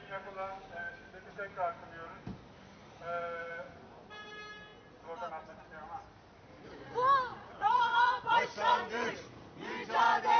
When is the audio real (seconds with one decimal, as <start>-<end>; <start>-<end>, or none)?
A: 0.0-7.3; 9.7-10.4